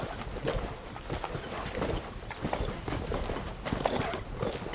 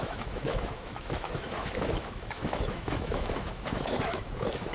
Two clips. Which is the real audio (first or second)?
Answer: first